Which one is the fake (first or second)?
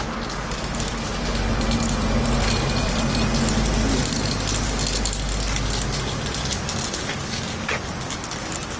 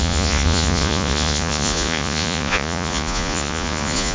second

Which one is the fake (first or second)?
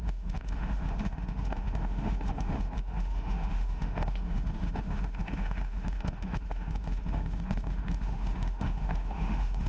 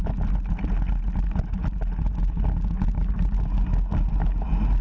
first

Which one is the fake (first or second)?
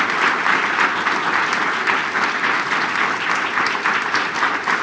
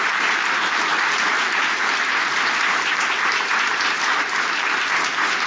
second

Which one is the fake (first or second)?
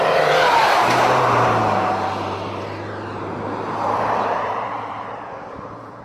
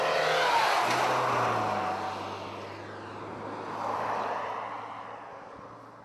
first